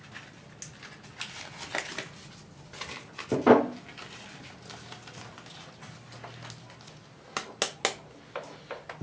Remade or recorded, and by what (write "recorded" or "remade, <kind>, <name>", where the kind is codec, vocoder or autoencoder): recorded